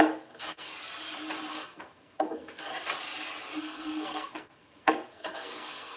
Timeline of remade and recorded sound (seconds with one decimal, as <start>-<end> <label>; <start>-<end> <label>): 0.0-0.7 remade; 0.7-1.5 recorded; 1.5-2.7 remade; 2.7-3.6 recorded; 3.6-6.0 remade

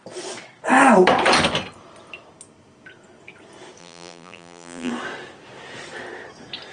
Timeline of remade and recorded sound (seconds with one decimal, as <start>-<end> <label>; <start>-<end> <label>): 0.0-3.8 recorded; 3.8-4.9 remade; 4.9-6.7 recorded

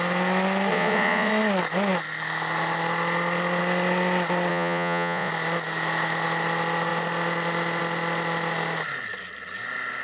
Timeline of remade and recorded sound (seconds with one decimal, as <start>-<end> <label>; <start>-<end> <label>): 0.0-0.7 recorded; 0.7-1.3 remade; 1.3-4.5 recorded; 4.5-5.3 remade; 5.3-10.0 recorded

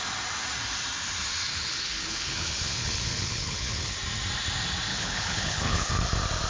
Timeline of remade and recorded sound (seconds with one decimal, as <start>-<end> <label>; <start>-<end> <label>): 0.0-1.5 recorded; 1.5-3.9 remade; 3.9-4.9 recorded; 4.9-5.9 remade; 5.9-6.5 recorded

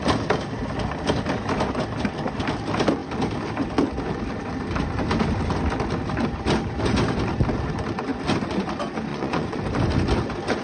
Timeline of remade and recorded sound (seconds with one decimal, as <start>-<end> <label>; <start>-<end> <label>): 0.0-9.1 recorded; 9.1-9.6 remade; 9.6-10.6 recorded